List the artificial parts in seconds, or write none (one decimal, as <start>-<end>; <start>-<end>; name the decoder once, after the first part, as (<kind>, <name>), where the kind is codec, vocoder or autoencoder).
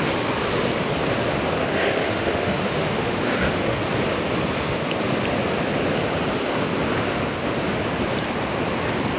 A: 1.6-3.8 (autoencoder, DAC-VAE)